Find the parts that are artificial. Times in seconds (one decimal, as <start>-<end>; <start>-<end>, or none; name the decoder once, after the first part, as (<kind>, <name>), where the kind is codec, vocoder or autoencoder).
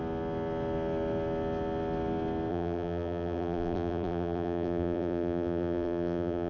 2.5-6.5 (vocoder, BigVGAN v2)